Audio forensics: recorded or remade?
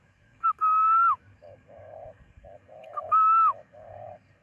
remade